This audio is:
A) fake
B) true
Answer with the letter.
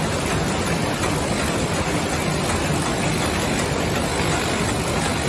B